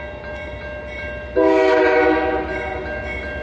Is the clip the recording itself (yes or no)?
yes